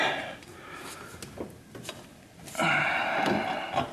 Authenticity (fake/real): real